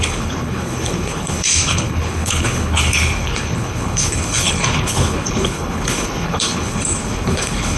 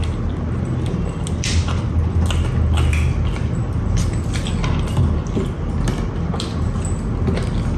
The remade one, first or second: first